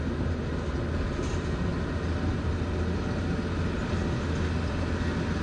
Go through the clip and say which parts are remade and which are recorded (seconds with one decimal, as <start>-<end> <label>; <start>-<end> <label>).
0.0-5.4 recorded

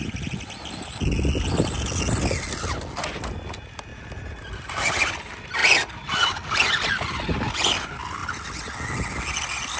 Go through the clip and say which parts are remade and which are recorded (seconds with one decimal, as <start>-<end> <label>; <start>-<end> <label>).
0.0-9.8 recorded

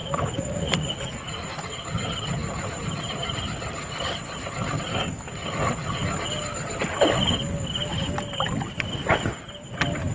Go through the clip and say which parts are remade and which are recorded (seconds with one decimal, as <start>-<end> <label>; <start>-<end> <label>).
0.0-1.7 remade; 1.7-10.1 recorded

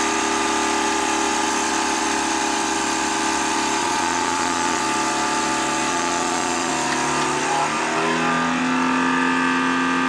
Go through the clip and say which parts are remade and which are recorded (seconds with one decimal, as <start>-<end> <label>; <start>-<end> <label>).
0.0-3.8 recorded; 3.8-4.8 remade; 4.8-5.9 recorded; 5.9-6.7 remade; 6.7-10.1 recorded

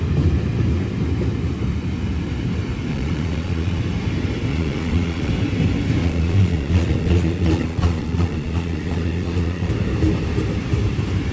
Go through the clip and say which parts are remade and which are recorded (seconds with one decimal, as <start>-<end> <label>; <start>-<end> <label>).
0.0-2.9 recorded; 2.9-3.8 remade; 3.8-4.5 recorded; 4.5-5.3 remade; 5.3-6.0 recorded; 6.0-9.7 remade; 9.7-11.3 recorded